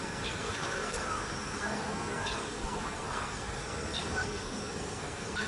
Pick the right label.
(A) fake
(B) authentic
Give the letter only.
A